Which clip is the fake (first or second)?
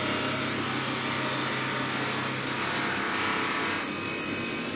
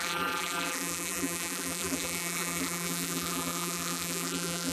second